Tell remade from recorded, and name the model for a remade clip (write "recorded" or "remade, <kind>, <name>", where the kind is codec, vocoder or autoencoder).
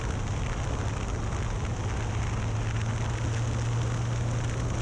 recorded